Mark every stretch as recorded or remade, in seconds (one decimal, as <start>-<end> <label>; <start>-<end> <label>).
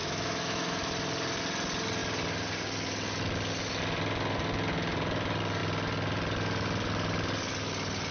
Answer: 0.0-0.9 remade; 0.9-8.1 recorded